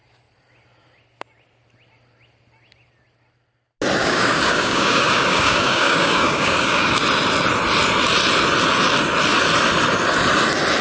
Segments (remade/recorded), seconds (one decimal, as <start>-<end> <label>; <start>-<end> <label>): 0.0-4.0 recorded; 4.0-7.0 remade; 7.0-10.8 recorded